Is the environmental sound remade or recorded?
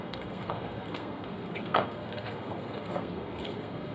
remade